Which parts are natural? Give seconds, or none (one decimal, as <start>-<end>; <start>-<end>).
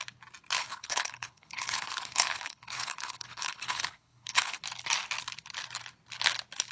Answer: 0.0-0.6; 4.6-6.7